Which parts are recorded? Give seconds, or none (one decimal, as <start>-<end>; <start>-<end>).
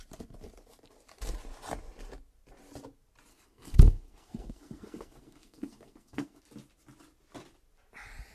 0.0-3.3; 6.4-8.3